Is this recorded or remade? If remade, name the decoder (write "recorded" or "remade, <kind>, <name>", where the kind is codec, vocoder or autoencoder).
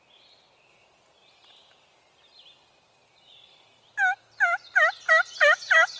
recorded